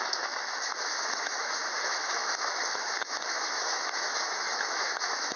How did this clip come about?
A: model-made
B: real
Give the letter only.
A